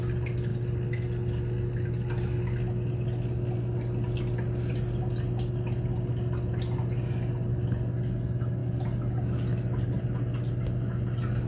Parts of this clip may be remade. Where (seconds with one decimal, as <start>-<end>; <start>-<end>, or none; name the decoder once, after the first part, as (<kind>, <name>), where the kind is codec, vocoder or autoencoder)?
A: none